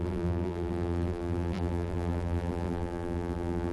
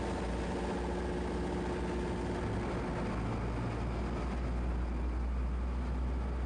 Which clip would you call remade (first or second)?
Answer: first